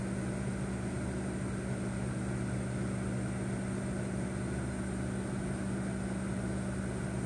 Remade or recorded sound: recorded